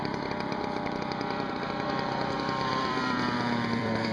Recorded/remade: remade